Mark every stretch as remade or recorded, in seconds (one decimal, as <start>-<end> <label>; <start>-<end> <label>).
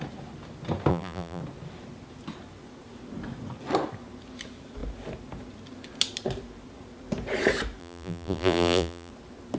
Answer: 0.0-0.9 recorded; 0.9-1.4 remade; 1.4-7.8 recorded; 7.8-9.1 remade; 9.1-9.6 recorded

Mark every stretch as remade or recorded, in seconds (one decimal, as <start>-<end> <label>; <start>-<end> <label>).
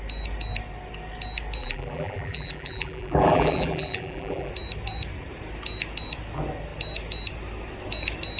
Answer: 0.0-1.6 recorded; 1.6-4.5 remade; 4.5-8.4 recorded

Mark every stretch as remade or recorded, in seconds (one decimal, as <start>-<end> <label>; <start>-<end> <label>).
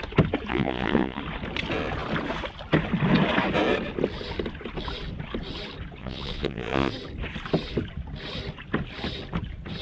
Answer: 0.0-0.5 recorded; 0.5-1.2 remade; 1.2-6.0 recorded; 6.0-6.9 remade; 6.9-9.8 recorded